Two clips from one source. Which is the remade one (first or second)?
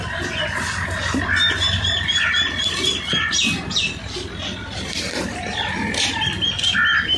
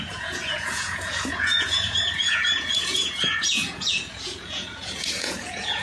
second